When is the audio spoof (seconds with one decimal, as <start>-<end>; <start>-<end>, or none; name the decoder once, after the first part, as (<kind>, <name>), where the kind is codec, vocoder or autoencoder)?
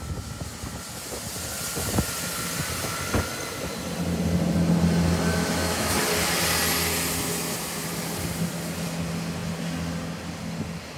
5.3-5.9 (autoencoder, DAC-VAE)